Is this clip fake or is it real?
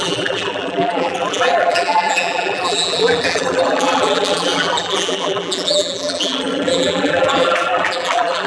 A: fake